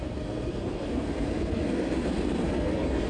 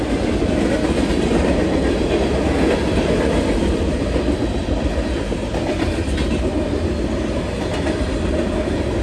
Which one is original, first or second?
second